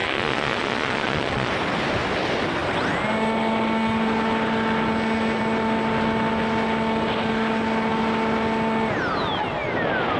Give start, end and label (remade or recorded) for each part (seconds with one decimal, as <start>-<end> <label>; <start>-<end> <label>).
0.0-1.5 remade; 1.5-10.2 recorded